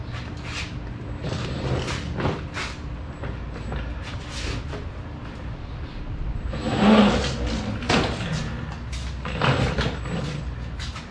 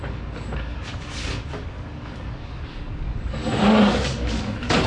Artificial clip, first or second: second